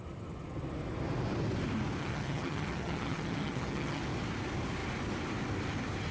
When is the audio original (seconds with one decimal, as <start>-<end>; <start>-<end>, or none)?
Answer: 0.0-2.0; 4.0-6.1